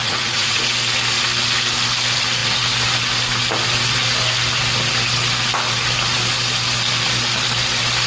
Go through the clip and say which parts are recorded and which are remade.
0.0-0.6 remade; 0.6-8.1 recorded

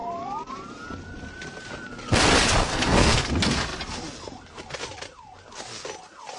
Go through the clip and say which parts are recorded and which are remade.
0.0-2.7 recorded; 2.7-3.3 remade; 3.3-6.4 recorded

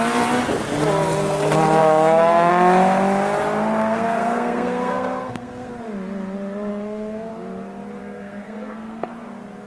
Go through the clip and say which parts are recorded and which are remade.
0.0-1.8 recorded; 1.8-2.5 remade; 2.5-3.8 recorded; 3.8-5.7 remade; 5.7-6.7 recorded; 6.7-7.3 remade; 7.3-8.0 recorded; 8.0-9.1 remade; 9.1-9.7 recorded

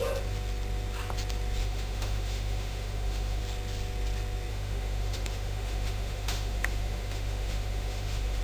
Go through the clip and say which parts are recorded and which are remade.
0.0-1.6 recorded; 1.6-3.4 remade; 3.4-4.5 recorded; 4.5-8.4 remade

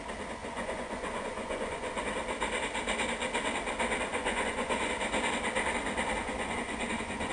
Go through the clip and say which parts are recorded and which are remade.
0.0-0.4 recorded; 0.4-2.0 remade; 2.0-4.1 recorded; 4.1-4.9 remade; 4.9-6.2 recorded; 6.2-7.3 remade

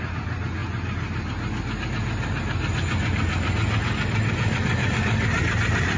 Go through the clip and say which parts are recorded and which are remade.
0.0-6.0 recorded

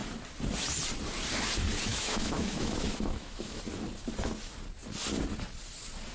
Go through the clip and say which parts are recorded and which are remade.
0.0-1.9 recorded; 1.9-3.6 remade; 3.6-6.1 recorded